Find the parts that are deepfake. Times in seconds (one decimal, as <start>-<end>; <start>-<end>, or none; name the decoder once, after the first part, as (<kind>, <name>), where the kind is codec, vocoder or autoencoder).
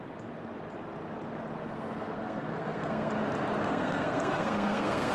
1.6-3.1 (codec, SNAC); 3.6-5.1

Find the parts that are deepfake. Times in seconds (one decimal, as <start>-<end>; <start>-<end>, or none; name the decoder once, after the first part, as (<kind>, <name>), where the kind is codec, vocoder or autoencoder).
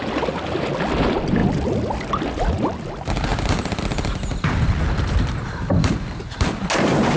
3.3-6.4 (vocoder, BigVGAN v2)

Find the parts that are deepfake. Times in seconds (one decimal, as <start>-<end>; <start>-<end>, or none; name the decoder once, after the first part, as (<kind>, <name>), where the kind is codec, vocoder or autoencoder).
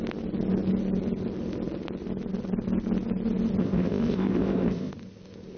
3.6-4.9 (codec, ZipCodec)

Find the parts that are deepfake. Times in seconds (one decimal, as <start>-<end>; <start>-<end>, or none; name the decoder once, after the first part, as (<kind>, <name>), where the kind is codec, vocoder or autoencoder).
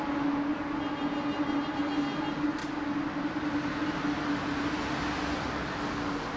none